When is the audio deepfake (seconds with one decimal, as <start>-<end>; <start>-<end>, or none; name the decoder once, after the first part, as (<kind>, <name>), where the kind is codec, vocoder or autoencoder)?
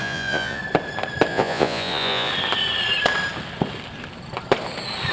0.0-0.6 (vocoder, Vocos); 1.3-2.3